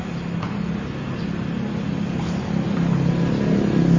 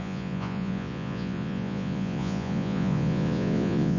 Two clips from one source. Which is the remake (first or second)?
second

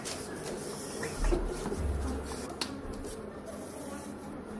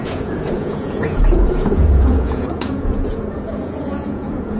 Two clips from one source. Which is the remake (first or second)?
second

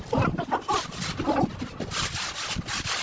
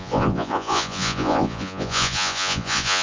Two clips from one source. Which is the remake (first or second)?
second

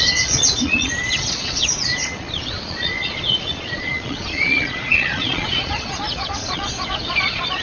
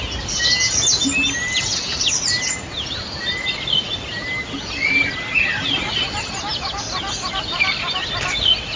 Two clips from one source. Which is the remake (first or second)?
first